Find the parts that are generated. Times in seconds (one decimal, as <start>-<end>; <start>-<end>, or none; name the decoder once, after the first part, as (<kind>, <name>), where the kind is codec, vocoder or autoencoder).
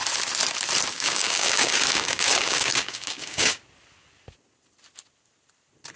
0.9-3.6 (codec, DAC)